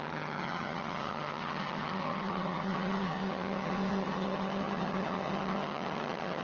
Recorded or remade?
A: remade